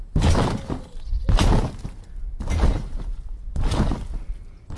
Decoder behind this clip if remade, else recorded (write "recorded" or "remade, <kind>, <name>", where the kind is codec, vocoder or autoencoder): recorded